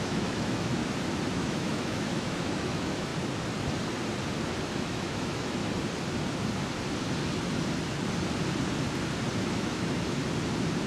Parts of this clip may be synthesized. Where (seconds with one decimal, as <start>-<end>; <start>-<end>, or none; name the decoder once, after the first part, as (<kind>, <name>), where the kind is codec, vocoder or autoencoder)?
0.0-0.8 (autoencoder, DAC-VAE); 1.3-3.1; 4.6-5.6; 9.4-10.2